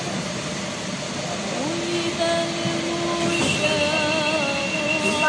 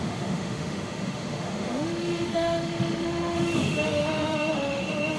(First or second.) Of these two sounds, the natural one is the first